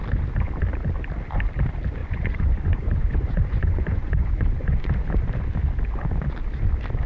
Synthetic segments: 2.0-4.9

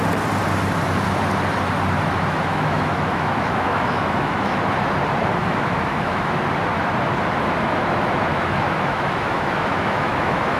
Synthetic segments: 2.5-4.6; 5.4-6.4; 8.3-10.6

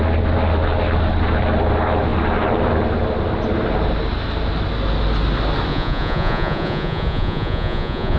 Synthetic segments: 5.7-8.2